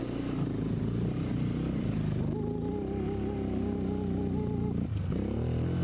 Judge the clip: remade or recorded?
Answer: recorded